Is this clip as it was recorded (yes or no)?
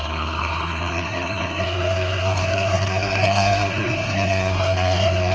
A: no